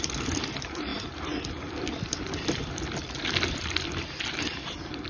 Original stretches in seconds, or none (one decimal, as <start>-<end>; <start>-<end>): 0.0-0.9; 4.0-5.1